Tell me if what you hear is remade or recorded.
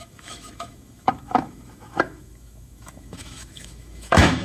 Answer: remade